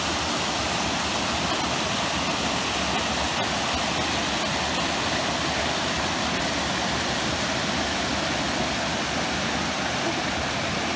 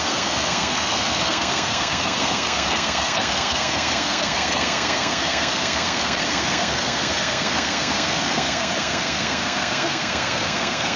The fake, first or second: second